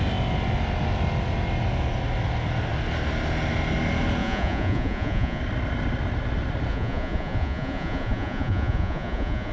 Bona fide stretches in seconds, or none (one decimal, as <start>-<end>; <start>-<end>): 0.0-4.2; 5.4-6.7